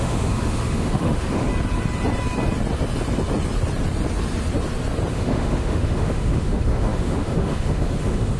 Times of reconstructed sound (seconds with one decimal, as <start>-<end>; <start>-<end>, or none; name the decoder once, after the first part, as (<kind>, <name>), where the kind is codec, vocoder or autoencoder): 0.0-1.5 (autoencoder, DAC-VAE); 5.1-8.4